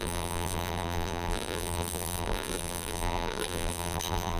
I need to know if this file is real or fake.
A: fake